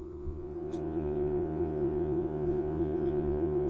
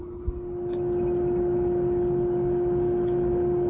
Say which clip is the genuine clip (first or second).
second